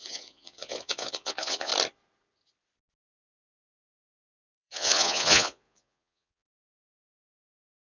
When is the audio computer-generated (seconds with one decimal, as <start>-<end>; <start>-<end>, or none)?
0.0-1.7; 4.0-7.8